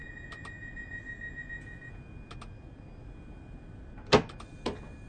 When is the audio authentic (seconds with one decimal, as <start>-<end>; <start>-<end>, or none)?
0.0-5.1